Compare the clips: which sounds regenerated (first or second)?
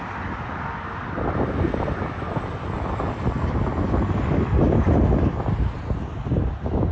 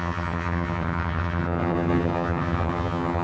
second